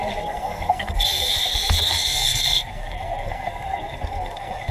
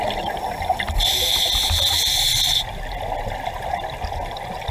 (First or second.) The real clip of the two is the second